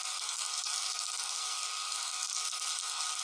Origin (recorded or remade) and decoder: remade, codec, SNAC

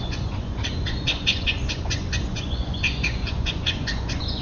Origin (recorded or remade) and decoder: remade, vocoder, Vocos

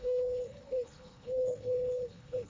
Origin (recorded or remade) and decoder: remade, codec, HILCodec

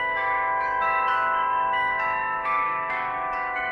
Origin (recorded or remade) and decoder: remade, autoencoder, DAC-VAE